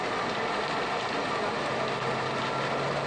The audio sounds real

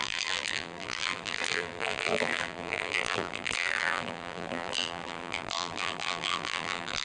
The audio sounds fake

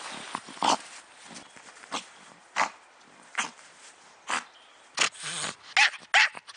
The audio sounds real